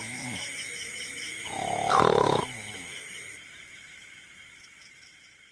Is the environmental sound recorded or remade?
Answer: remade